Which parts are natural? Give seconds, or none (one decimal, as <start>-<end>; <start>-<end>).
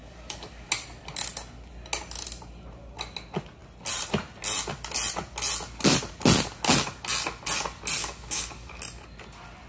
0.7-8.0; 8.8-9.7